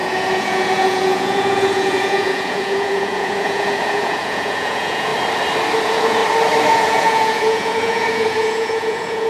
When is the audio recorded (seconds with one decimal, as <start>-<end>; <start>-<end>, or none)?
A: 5.1-5.8; 6.2-6.7